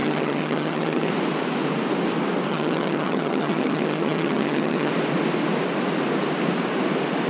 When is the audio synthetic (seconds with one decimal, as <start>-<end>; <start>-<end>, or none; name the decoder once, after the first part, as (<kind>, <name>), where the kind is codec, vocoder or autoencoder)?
0.0-1.1 (vocoder, HiFi-GAN); 2.5-4.9